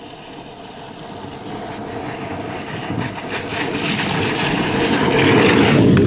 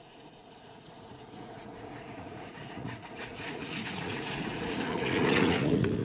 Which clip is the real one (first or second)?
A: first